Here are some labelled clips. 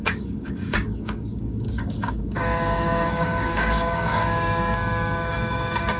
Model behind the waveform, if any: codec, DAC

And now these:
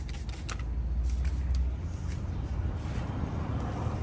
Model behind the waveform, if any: none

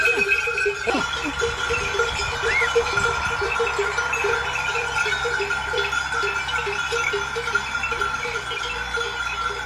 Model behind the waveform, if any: vocoder, BigVGAN v2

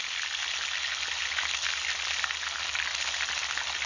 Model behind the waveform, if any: none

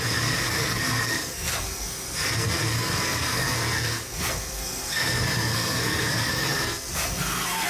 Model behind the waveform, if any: codec, SNAC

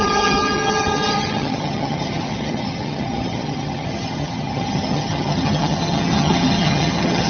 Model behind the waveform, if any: vocoder, HiFi-GAN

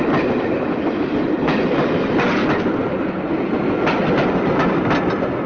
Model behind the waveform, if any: none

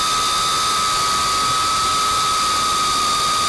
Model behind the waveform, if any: none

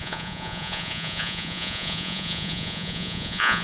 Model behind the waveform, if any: vocoder, Vocos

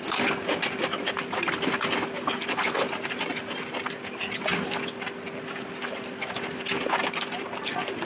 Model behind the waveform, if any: none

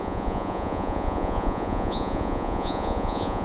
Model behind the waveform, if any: vocoder, Vocos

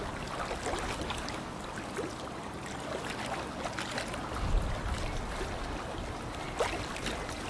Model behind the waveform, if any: none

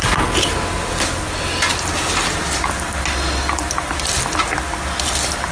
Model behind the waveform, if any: none